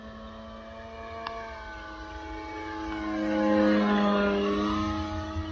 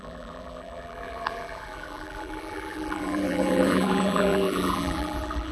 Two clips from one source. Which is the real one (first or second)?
first